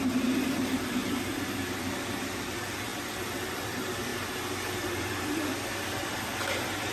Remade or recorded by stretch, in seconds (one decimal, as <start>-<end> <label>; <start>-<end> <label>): 0.0-1.0 remade; 1.0-1.8 recorded; 1.8-2.9 remade; 2.9-3.5 recorded; 3.5-4.1 remade; 4.1-4.7 recorded; 4.7-6.3 remade; 6.3-6.9 recorded